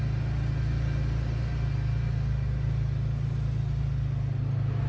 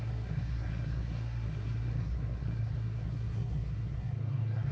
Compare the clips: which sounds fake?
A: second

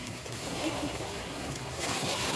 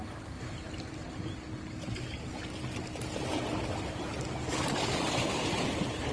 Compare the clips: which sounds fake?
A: first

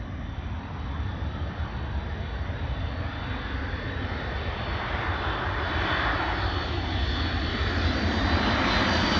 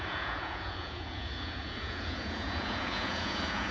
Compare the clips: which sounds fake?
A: second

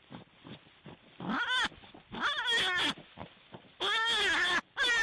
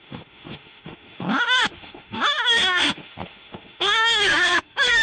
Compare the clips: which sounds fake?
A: second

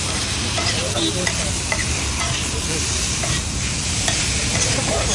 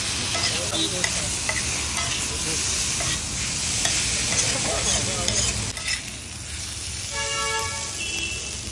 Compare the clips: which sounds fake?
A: first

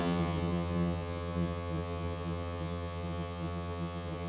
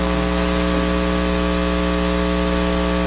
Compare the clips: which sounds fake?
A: first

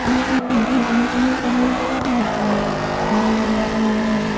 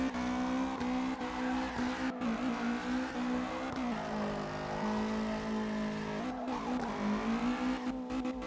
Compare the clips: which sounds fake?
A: first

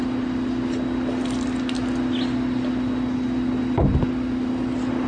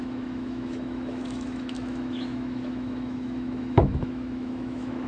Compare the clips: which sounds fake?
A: second